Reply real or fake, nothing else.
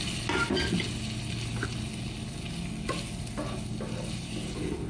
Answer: real